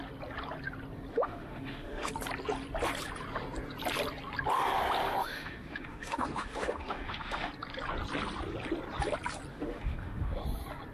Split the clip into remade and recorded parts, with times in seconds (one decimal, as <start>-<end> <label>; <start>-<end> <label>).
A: 0.0-1.1 recorded; 1.1-2.1 remade; 2.1-5.2 recorded; 5.2-7.5 remade; 7.5-9.5 recorded; 9.5-10.4 remade; 10.4-10.9 recorded